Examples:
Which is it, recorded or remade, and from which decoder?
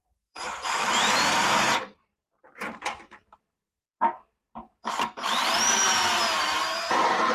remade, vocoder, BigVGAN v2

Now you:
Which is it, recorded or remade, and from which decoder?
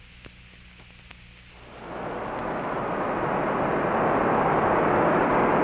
recorded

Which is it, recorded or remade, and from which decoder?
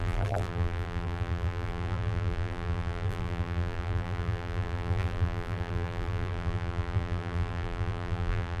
remade, vocoder, BigVGAN v2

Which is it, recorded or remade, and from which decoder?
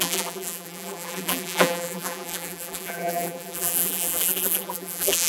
remade, vocoder, BigVGAN v2